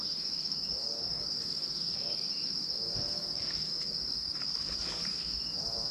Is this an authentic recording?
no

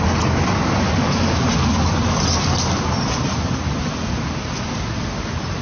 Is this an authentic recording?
yes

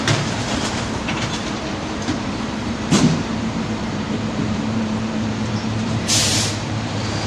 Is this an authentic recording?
no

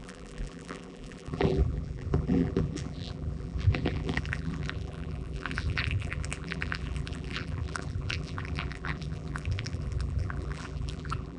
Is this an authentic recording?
no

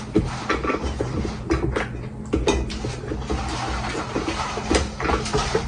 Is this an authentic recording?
yes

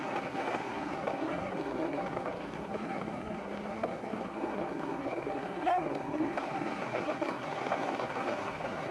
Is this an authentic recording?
no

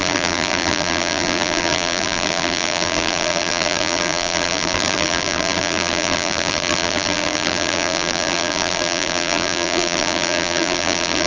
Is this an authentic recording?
no